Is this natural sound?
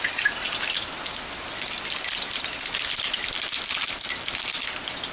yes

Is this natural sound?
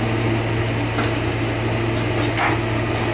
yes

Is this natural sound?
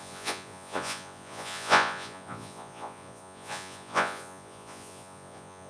no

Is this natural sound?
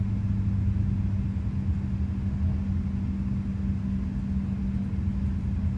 yes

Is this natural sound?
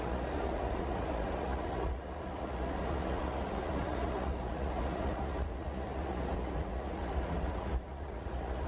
no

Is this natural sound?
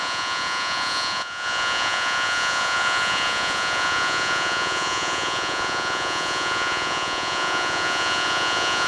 no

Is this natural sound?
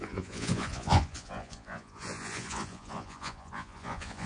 no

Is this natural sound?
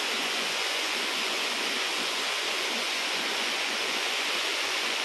no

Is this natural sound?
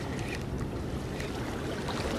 yes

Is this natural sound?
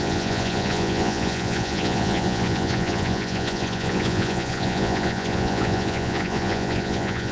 no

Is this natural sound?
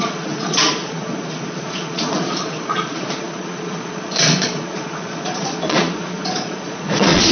no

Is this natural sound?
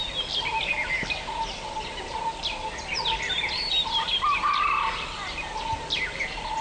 yes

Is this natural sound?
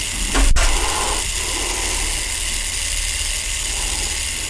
yes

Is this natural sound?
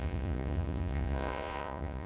no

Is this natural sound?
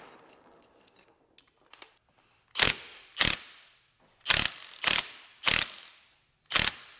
yes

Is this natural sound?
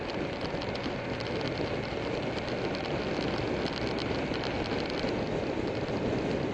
yes